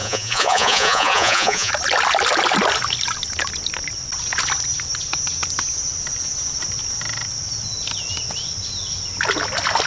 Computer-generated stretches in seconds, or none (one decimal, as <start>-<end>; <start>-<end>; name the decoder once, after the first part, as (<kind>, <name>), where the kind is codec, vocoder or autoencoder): 0.0-1.7 (vocoder, Vocos)